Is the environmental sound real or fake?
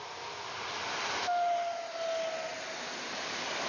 real